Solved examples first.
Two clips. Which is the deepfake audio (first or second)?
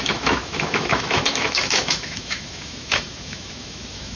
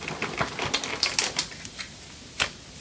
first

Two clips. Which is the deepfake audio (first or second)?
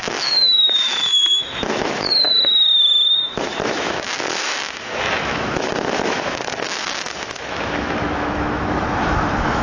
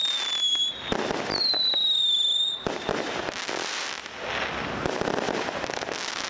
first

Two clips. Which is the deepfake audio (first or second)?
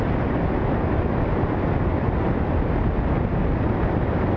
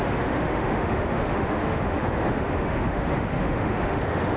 second